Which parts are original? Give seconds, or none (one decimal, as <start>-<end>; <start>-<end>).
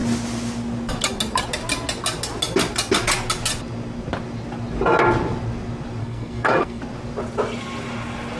0.0-6.0; 6.8-8.4